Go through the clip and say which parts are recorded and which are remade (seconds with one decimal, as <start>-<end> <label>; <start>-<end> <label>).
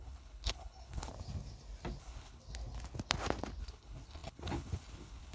0.0-1.1 remade; 1.1-2.0 recorded; 2.0-2.4 remade; 2.4-3.6 recorded; 3.6-5.3 remade